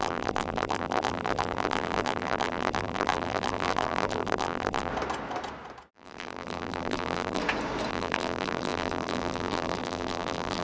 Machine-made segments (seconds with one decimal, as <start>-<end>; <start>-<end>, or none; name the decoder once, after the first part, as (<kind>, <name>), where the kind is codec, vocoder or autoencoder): 0.0-4.9 (vocoder, BigVGAN v2); 5.9-7.4; 7.9-10.6